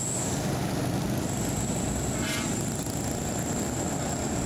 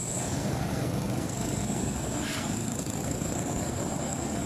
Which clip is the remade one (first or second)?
second